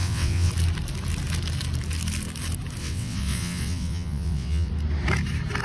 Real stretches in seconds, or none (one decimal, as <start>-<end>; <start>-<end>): 0.5-2.8; 4.7-5.6